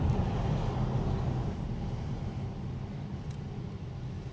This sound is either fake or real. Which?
real